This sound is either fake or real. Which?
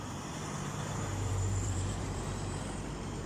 fake